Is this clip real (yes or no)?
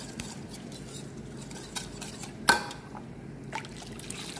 yes